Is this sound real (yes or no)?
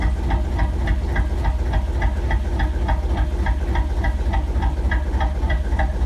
yes